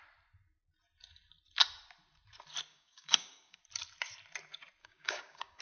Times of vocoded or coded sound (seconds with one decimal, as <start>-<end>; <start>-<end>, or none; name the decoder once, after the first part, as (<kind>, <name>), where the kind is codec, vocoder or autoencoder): 2.7-3.6 (codec, DAC); 4.8-5.6